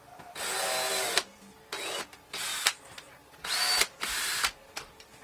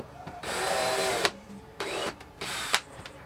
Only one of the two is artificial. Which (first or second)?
second